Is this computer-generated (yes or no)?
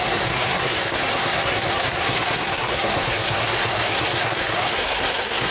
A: yes